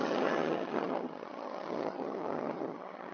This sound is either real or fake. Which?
fake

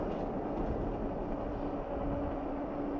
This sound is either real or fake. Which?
real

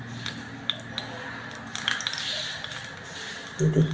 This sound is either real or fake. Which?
real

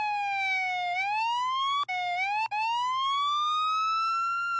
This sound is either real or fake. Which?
real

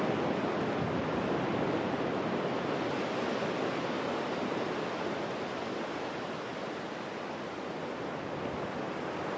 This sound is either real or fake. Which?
real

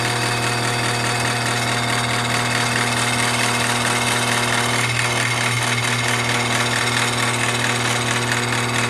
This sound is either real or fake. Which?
real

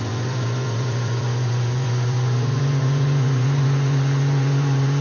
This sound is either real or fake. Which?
fake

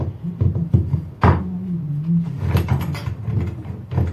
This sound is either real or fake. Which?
real